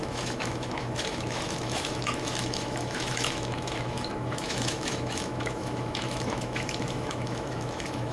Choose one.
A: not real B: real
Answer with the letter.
A